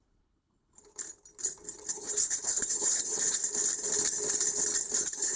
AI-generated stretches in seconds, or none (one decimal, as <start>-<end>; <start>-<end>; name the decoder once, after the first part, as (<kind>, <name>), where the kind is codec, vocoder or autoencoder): 0.0-0.8 (codec, HILCodec); 1.9-3.4; 5.0-5.4